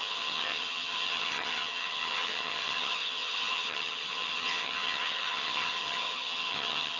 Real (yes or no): no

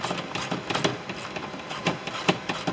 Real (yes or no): yes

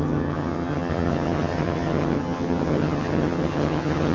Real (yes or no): no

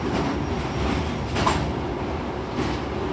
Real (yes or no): yes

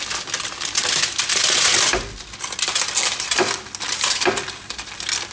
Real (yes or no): yes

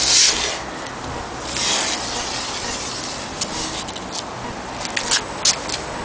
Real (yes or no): yes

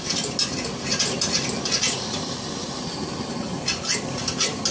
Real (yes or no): yes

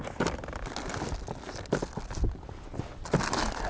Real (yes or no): yes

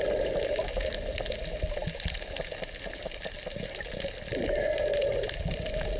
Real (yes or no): yes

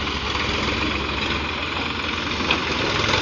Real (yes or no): yes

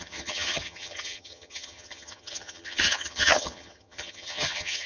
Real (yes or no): no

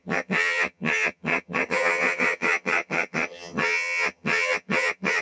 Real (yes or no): no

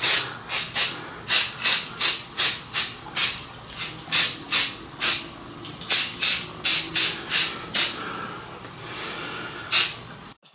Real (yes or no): yes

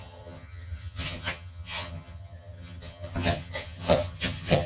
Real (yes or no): no